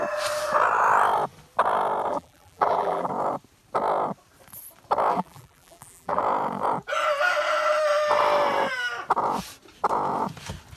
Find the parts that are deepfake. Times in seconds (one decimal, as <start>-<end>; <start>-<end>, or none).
2.1-3.1; 5.1-6.2